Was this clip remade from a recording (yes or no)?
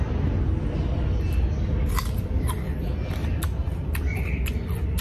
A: no